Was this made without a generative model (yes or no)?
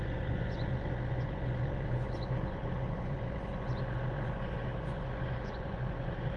no